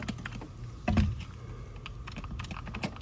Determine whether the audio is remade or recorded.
recorded